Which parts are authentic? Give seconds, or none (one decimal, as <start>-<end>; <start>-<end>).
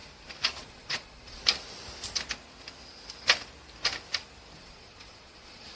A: 0.0-0.6; 1.4-4.6